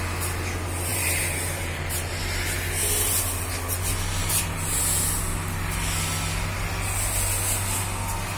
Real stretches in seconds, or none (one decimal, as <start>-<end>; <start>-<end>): 0.0-0.9; 2.1-4.2; 4.8-8.4